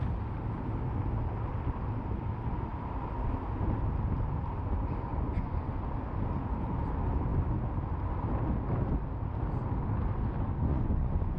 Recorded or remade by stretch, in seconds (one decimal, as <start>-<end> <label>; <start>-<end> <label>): 0.0-5.1 recorded; 5.1-5.7 remade; 5.7-10.7 recorded; 10.7-11.4 remade